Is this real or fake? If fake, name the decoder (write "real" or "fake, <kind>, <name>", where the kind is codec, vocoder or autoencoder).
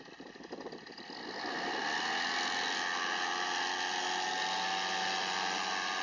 real